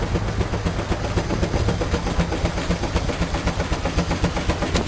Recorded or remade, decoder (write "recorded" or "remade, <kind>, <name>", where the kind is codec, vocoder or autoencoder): recorded